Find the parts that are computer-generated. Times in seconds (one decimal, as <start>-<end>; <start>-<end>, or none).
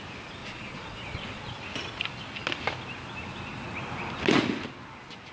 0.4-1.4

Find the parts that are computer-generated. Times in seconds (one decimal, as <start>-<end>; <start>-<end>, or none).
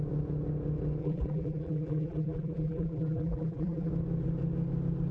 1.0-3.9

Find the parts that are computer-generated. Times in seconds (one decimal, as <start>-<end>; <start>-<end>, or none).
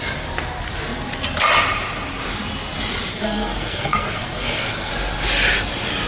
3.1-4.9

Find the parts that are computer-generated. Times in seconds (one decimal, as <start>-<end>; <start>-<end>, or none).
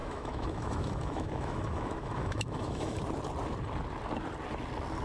0.0-3.0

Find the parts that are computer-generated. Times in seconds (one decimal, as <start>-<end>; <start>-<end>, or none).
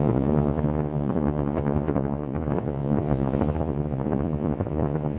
0.0-5.2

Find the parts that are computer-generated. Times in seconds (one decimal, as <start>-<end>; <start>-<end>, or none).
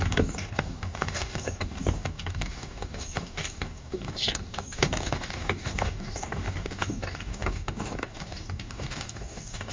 0.0-9.7